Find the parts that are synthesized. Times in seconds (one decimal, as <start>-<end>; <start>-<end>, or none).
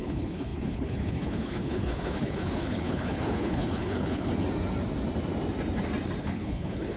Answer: 0.0-4.3; 6.2-7.0